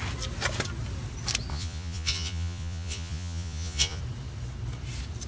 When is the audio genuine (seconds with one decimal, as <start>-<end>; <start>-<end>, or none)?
0.0-1.5; 4.0-5.3